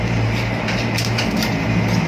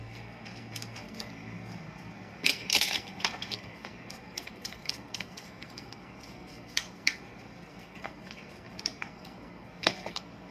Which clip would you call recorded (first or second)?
first